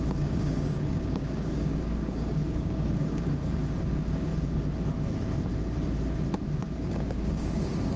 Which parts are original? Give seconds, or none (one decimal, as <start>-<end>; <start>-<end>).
4.3-6.6